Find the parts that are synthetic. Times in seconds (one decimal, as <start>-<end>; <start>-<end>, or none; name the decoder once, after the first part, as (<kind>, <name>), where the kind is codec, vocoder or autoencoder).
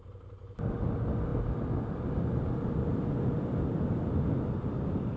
none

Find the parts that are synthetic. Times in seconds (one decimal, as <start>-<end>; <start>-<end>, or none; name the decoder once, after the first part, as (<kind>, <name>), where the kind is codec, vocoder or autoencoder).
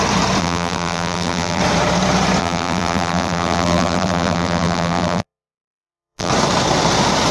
0.4-1.6 (vocoder, BigVGAN v2); 2.4-6.3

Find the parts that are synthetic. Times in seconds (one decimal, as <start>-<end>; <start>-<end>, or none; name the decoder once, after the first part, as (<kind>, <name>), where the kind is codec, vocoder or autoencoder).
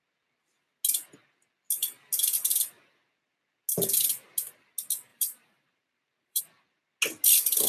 5.1-6.4 (vocoder, BigVGAN v2)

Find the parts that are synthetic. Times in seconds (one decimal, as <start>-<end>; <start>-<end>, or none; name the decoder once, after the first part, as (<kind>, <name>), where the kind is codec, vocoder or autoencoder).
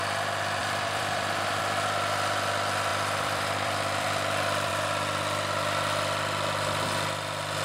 0.6-1.6 (vocoder, BigVGAN v2); 2.9-4.7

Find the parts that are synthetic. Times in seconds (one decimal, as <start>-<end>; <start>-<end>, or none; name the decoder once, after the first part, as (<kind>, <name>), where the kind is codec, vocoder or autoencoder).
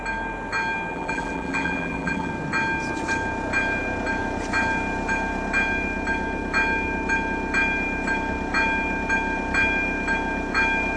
0.9-2.3 (vocoder, BigVGAN v2)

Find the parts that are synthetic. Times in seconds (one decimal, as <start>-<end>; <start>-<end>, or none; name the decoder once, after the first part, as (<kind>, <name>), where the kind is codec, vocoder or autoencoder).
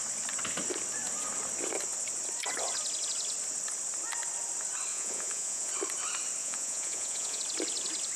4.9-5.7 (vocoder, Vocos); 6.4-7.4